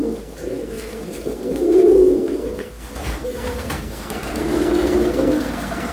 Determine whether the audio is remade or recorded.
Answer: remade